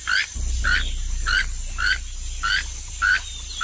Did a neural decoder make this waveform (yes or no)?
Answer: no